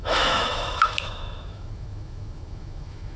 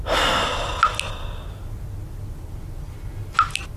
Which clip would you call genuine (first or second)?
second